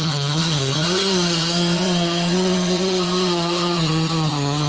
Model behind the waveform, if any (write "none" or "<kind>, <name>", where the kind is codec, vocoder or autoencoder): vocoder, HiFi-GAN